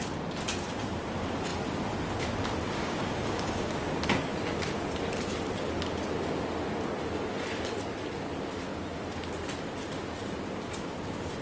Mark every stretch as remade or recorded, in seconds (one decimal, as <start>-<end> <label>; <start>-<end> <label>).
0.0-2.8 recorded; 2.8-3.7 remade; 3.7-11.4 recorded